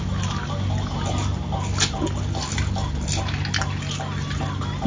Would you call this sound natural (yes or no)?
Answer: yes